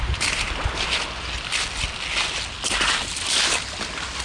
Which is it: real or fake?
real